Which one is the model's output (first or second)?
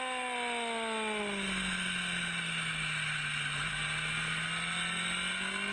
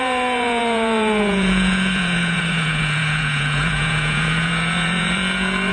second